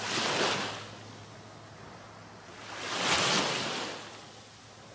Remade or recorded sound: recorded